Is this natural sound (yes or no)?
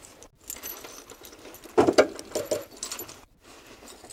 yes